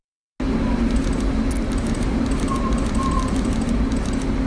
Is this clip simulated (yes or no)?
no